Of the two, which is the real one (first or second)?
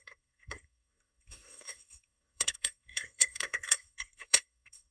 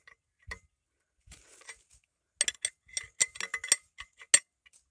second